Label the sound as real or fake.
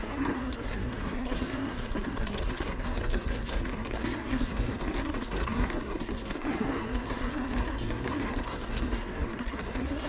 fake